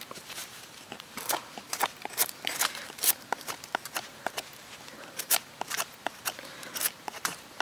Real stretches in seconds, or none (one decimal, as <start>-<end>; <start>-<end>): none